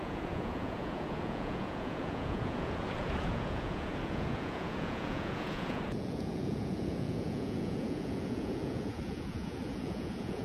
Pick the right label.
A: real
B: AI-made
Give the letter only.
B